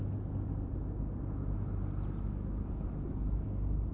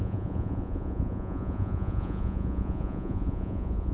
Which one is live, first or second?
first